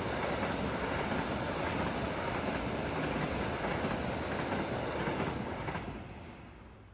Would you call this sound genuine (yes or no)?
yes